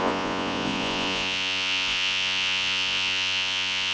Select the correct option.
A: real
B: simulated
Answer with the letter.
B